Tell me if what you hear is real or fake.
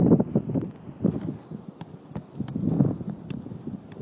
real